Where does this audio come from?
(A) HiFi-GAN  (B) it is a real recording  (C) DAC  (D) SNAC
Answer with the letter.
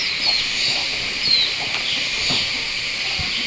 B